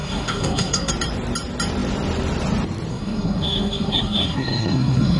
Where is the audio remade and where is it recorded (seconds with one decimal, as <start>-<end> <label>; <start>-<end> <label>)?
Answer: 0.0-0.9 remade; 0.9-2.9 recorded; 2.9-5.2 remade